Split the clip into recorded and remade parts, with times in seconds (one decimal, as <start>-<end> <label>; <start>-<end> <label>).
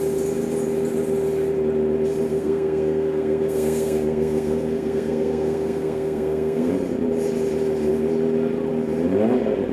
0.0-2.3 recorded; 2.3-6.7 remade; 6.7-9.7 recorded